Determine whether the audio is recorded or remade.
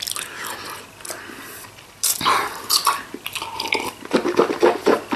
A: recorded